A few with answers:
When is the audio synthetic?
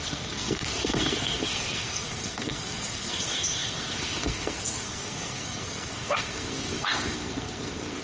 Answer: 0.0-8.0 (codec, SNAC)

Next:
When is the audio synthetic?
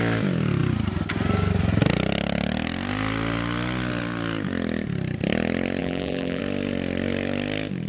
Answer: 5.8-6.4 (vocoder, BigVGAN v2)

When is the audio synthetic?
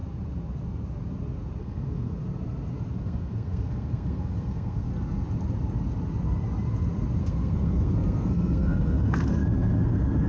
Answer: 1.6-2.2 (codec, SNAC); 3.0-4.9; 7.2-10.3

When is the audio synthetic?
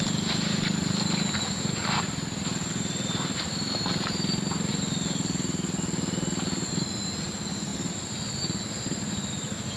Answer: 0.0-4.7 (vocoder, BigVGAN v2); 7.2-9.8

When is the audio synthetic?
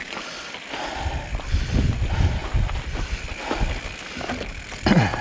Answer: none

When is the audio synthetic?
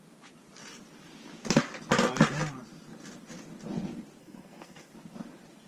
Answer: 4.2-4.9 (codec, SNAC)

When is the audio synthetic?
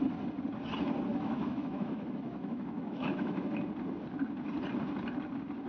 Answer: 1.1-3.4 (autoencoder, DAC-VAE)